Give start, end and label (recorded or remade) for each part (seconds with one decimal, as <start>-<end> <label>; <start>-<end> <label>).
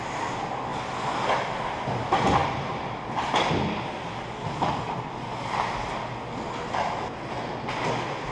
0.0-8.3 recorded